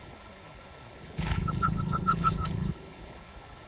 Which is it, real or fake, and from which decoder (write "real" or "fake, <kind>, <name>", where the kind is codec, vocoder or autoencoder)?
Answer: fake, codec, HILCodec